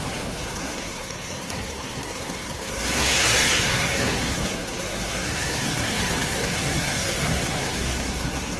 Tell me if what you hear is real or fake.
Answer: fake